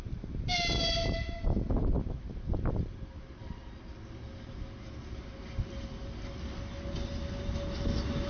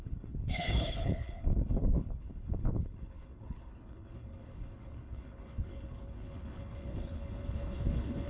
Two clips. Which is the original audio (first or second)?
first